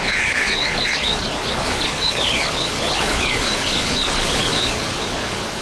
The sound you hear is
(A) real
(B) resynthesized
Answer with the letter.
B